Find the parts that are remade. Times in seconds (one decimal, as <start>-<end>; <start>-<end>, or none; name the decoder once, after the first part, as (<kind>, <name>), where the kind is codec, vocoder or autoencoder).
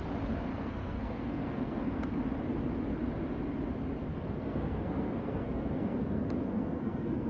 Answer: 0.5-2.2 (codec, SNAC); 4.1-7.3